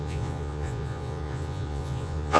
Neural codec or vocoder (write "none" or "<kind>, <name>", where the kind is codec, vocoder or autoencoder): vocoder, Vocos